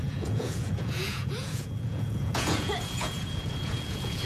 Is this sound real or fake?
fake